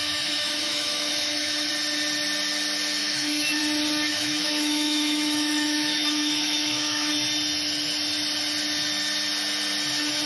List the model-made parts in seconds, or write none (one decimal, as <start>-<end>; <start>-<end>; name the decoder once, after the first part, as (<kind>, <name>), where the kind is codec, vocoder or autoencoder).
0.0-1.7 (autoencoder, DAC-VAE); 3.0-3.6; 4.1-7.1